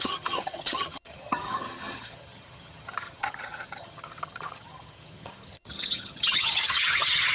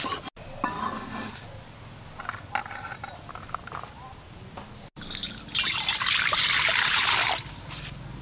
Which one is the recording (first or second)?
second